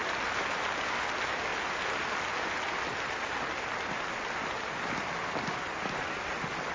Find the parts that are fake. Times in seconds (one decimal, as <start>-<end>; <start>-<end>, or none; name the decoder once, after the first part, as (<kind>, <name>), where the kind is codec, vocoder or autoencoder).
none